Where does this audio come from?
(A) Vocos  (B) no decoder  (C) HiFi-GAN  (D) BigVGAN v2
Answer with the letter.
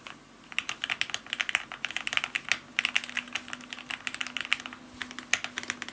B